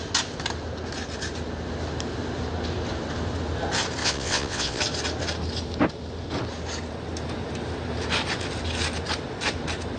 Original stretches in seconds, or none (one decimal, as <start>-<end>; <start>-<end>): 0.0-4.0; 4.8-10.0